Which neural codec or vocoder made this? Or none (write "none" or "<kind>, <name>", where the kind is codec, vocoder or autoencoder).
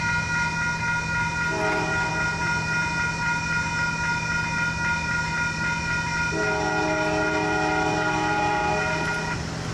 none